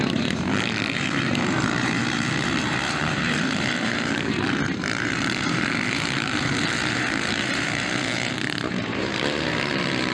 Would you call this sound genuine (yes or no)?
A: no